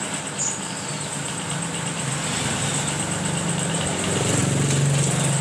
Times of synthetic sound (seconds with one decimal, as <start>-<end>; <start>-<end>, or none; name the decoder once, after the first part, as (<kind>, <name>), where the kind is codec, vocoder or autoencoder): 0.0-4.4 (vocoder, BigVGAN v2)